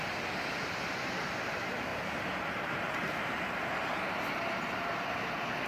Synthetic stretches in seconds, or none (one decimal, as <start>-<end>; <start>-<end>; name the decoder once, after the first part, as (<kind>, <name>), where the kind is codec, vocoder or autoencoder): 1.9-5.3 (vocoder, BigVGAN v2)